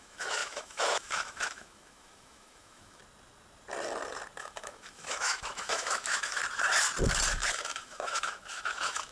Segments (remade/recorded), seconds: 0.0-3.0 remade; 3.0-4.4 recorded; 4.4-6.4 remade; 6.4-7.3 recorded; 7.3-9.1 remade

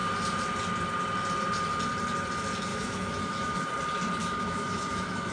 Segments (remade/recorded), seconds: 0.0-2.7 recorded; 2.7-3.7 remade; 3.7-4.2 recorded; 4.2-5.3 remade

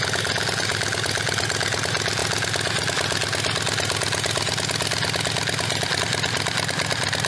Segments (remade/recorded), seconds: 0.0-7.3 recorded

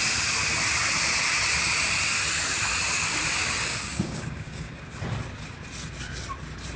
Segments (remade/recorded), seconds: 0.0-3.4 recorded; 3.4-4.8 remade; 4.8-6.8 recorded

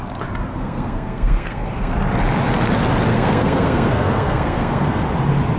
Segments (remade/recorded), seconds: 0.0-0.5 recorded; 0.5-1.9 remade; 1.9-3.1 recorded; 3.1-5.0 remade; 5.0-5.6 recorded

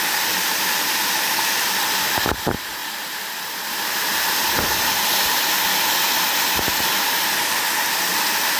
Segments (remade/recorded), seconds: 0.0-8.6 recorded